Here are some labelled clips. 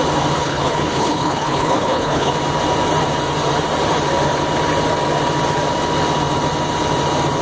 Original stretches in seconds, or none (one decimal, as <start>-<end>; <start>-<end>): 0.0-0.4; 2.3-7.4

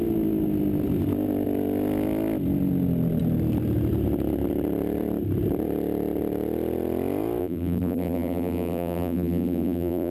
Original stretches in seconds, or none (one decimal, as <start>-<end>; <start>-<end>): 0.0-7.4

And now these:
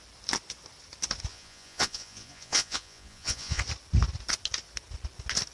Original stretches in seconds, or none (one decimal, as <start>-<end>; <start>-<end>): 0.0-1.3; 3.6-5.5

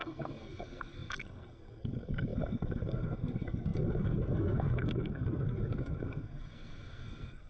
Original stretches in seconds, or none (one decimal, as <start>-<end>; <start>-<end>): none

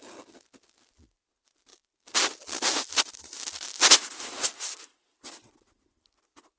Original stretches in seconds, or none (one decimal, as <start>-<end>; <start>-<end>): 0.0-6.6